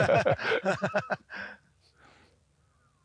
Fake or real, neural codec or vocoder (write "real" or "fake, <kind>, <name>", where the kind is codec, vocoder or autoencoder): real